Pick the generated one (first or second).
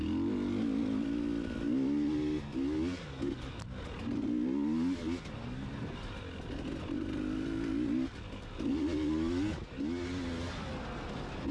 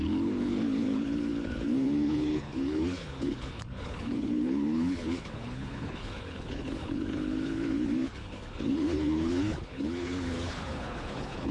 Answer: second